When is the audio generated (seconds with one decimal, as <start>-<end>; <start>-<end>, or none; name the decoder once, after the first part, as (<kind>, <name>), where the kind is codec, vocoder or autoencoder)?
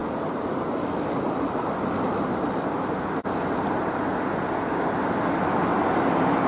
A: 0.0-1.9 (vocoder, BigVGAN v2); 5.7-6.5